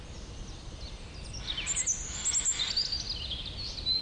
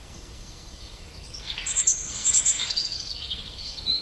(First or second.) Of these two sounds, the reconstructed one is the second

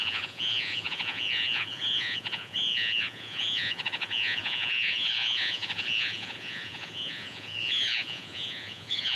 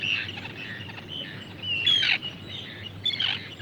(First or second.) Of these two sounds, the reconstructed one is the first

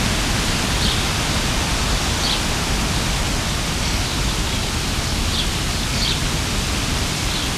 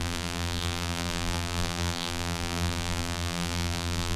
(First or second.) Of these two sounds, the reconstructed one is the second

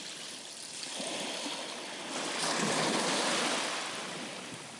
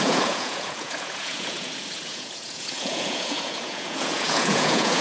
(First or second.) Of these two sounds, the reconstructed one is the second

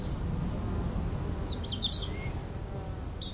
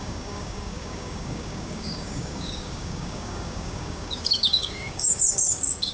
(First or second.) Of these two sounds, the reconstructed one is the second